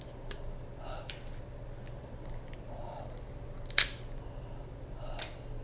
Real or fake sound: real